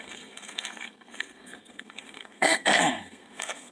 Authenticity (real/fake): fake